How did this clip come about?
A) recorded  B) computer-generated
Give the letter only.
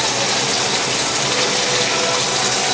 A